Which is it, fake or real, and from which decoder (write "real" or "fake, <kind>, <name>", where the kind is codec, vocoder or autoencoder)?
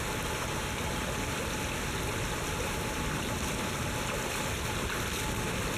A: real